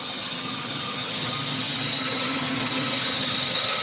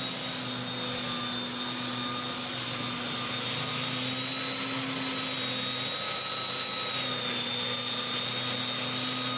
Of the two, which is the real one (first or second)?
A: second